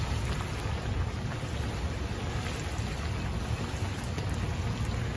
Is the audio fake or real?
real